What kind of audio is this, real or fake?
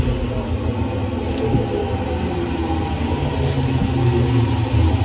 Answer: real